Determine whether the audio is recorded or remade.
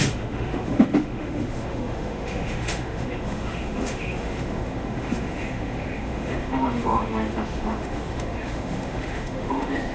remade